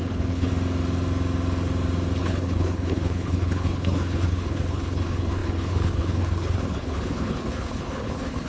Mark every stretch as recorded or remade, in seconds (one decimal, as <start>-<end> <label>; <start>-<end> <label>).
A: 0.0-0.5 remade; 0.5-2.2 recorded; 2.2-8.5 remade